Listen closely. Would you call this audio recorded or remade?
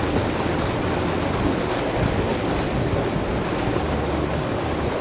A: recorded